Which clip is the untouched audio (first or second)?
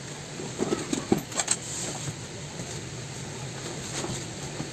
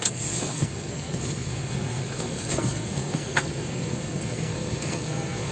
first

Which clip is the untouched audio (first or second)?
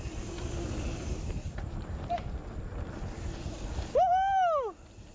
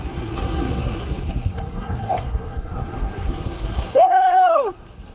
first